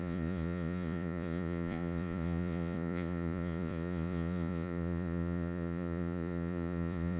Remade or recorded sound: remade